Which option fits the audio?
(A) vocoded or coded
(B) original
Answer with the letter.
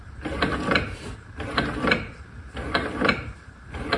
B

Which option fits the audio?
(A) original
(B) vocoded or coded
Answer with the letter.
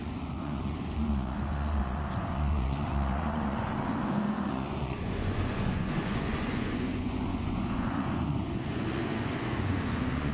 B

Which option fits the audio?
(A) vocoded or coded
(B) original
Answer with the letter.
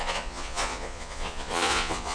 A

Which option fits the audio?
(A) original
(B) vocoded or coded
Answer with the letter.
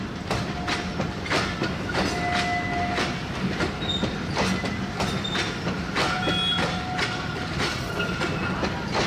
A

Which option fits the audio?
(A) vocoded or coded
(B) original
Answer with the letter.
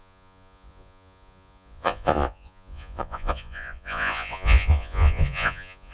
A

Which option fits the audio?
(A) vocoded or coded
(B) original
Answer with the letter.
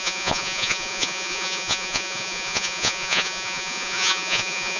A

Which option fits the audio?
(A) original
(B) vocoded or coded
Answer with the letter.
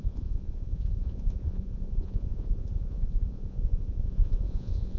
B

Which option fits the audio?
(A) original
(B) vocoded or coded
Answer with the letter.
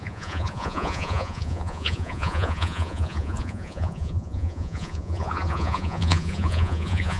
B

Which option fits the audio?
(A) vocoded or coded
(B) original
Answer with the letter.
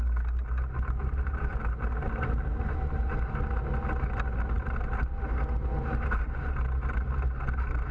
B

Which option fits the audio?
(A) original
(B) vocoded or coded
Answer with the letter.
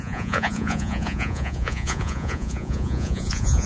B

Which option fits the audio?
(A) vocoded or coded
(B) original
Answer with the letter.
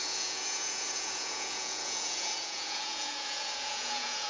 A